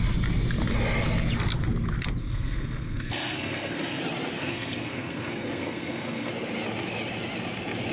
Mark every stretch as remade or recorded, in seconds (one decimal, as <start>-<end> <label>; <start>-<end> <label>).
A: 0.0-2.2 recorded; 2.2-4.0 remade; 4.0-4.4 recorded; 4.4-6.3 remade; 6.3-7.9 recorded